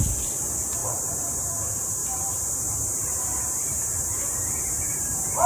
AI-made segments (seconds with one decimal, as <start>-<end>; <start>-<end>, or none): 0.8-1.5; 2.0-5.5